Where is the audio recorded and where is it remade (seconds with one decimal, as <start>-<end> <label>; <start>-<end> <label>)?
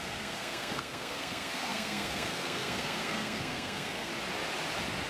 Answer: 0.0-4.1 remade; 4.1-5.1 recorded